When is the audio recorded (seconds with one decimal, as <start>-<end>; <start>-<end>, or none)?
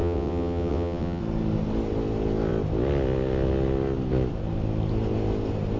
1.2-5.8